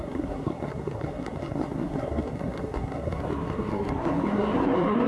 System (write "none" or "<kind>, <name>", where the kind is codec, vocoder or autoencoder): codec, SNAC